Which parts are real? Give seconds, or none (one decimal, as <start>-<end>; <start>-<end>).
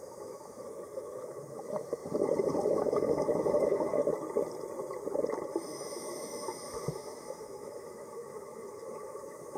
2.0-2.7; 4.0-5.7